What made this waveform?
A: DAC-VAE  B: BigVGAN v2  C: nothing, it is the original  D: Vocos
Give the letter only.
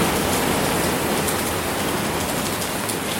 C